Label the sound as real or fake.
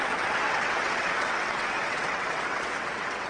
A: fake